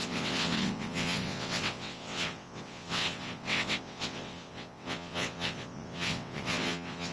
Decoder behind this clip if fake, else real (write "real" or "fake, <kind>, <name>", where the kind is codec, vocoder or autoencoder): fake, vocoder, WaveNeXt